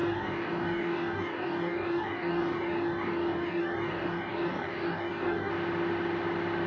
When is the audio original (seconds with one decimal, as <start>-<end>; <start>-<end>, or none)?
5.5-6.7